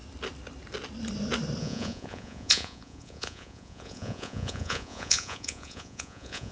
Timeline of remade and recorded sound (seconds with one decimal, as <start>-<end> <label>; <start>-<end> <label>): 0.0-1.6 recorded; 1.6-6.5 remade